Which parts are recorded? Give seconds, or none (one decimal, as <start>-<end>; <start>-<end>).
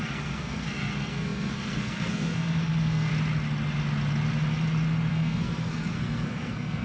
3.1-5.1